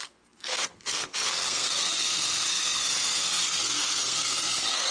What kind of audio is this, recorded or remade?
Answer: remade